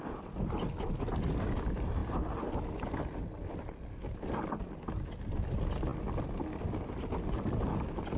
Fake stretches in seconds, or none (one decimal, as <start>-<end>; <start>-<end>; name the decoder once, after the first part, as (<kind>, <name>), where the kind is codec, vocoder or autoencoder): none